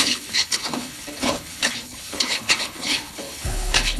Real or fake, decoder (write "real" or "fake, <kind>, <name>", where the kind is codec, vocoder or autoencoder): fake, codec, HILCodec